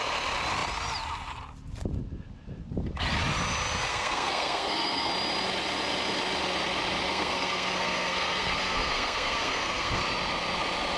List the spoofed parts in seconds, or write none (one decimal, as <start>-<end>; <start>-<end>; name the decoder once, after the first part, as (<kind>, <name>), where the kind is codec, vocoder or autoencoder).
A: 3.9-5.1 (codec, SNAC); 7.1-10.0